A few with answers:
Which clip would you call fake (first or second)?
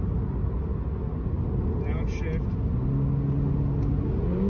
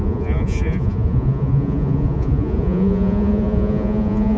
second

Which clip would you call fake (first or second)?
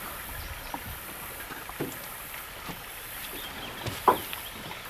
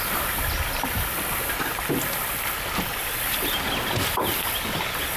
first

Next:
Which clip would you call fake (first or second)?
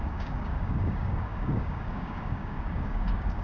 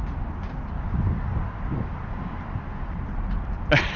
first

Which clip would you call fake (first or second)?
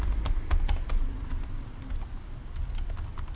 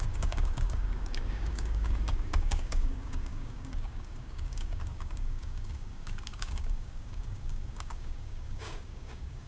second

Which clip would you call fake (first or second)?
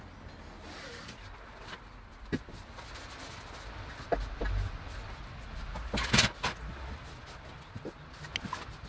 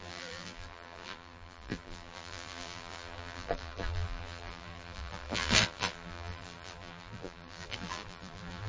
second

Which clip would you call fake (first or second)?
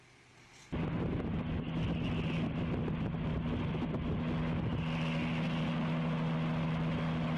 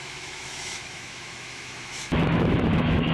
second